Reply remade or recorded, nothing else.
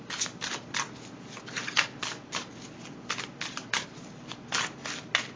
recorded